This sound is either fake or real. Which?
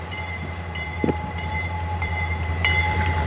fake